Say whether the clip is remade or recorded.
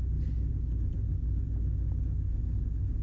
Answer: recorded